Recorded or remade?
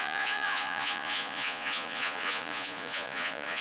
remade